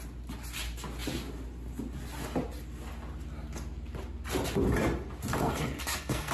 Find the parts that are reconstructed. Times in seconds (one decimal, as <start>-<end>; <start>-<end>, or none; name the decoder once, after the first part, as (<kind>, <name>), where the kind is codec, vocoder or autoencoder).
5.3-6.3 (codec, SNAC)